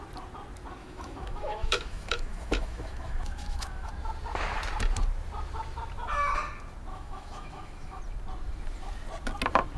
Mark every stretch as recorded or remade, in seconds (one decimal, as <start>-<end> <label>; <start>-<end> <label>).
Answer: 0.0-0.8 recorded; 0.8-3.9 remade; 3.9-6.9 recorded; 6.9-8.0 remade; 8.0-9.8 recorded